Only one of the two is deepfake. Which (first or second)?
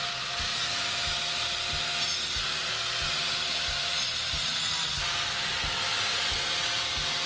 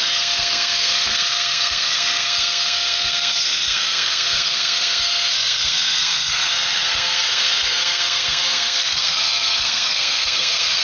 second